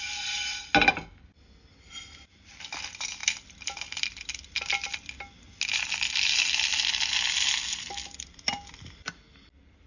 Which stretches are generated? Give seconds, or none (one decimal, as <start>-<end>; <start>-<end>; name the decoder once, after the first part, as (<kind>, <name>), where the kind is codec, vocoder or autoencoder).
none